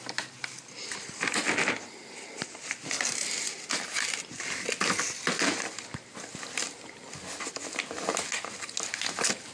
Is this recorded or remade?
recorded